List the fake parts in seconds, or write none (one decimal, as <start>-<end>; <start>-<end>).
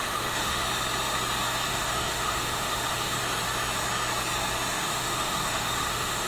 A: 0.0-0.6; 1.7-3.2; 4.7-6.3